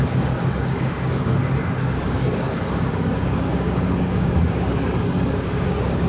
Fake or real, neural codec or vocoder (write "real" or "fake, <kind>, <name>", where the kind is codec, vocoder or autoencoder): fake, codec, DAC